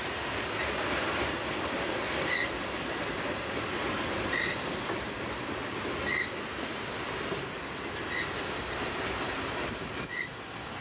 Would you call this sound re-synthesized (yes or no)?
no